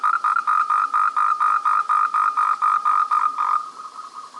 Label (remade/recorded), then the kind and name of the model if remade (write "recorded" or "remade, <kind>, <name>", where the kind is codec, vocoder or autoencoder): recorded